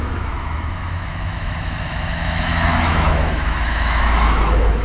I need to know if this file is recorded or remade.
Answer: remade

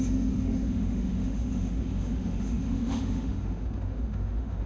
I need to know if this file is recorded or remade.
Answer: remade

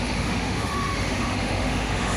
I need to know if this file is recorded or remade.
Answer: remade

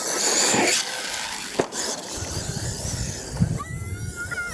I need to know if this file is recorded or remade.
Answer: recorded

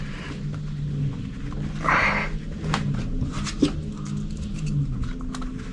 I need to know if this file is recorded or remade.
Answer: recorded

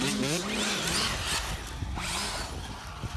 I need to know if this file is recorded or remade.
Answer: recorded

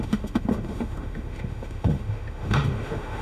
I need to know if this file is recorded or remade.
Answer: remade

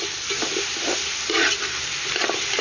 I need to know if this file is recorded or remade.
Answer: recorded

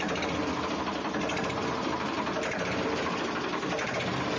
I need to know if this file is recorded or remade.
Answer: recorded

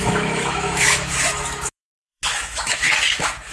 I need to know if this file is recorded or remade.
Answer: remade